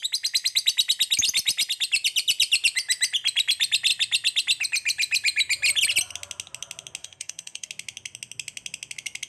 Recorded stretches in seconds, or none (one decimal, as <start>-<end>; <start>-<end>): 0.0-7.0; 7.7-9.3